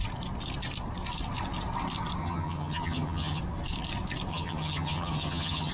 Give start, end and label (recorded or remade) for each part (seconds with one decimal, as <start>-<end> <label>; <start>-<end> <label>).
0.0-2.2 recorded; 2.2-3.4 remade; 3.4-4.3 recorded; 4.3-5.7 remade